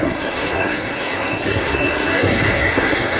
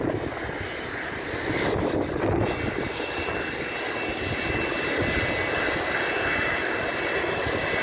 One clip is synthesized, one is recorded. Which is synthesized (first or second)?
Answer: first